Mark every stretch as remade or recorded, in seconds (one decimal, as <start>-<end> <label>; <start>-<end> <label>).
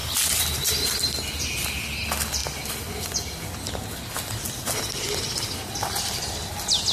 0.0-6.9 recorded